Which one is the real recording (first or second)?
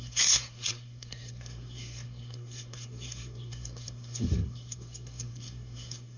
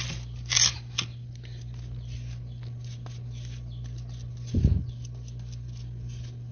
second